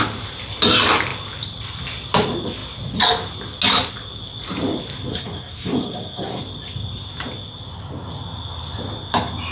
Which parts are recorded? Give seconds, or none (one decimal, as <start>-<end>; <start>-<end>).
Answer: 0.0-5.1; 6.4-9.5